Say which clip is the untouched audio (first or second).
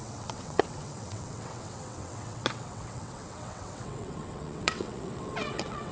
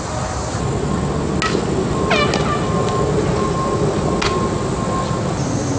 second